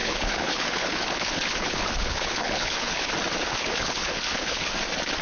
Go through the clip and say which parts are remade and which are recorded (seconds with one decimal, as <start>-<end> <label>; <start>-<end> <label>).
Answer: 0.0-3.1 remade; 3.1-3.5 recorded; 3.5-4.7 remade; 4.7-5.2 recorded